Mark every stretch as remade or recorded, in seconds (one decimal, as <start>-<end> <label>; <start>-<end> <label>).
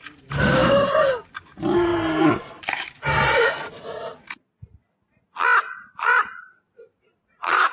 0.0-0.6 remade; 0.6-1.4 recorded; 1.4-1.9 remade; 1.9-5.9 recorded; 5.9-7.7 remade